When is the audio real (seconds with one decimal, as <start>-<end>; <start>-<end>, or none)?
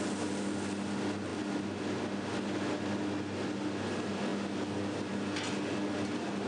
0.0-6.5